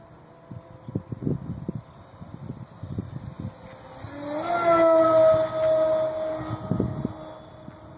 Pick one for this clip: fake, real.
real